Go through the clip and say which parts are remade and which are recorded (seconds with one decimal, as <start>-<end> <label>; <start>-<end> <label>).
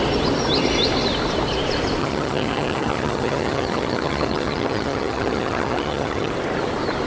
0.0-2.0 recorded; 2.0-6.3 remade; 6.3-7.1 recorded